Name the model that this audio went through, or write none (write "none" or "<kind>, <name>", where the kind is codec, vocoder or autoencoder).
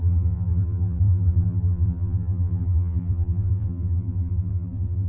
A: vocoder, BigVGAN v2